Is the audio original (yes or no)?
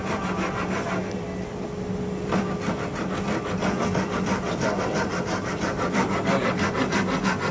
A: yes